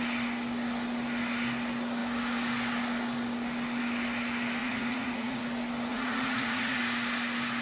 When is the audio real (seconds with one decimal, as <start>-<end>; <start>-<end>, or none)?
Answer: 0.0-4.6; 5.4-5.9; 6.8-7.6

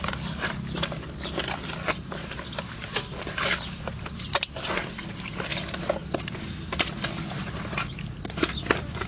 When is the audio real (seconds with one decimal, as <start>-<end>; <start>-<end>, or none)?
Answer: 0.0-9.1

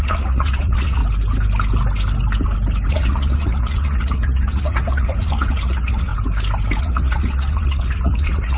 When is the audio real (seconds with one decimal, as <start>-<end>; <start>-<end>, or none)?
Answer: 1.0-2.9; 6.1-6.8

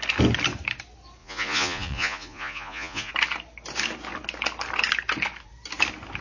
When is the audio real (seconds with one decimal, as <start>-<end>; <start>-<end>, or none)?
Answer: 0.0-1.2; 3.1-6.2

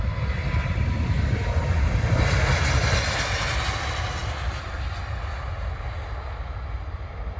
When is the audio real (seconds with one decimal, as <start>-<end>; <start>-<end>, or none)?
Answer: 0.0-7.4